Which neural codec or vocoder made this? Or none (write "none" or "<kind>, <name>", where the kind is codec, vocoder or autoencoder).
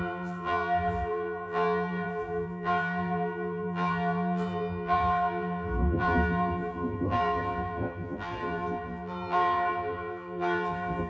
vocoder, BigVGAN v2